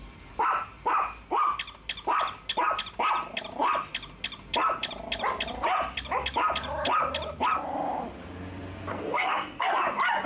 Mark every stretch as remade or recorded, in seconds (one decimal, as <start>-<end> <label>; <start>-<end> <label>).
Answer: 0.0-8.9 recorded; 8.9-9.7 remade; 9.7-10.3 recorded